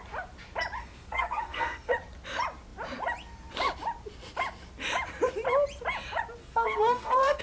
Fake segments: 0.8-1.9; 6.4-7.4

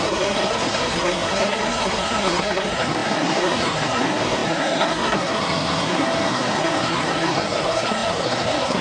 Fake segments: 0.0-8.8

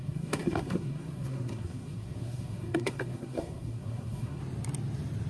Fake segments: 0.0-4.4

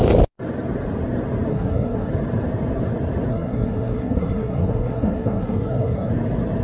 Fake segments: 1.5-2.1; 3.3-6.1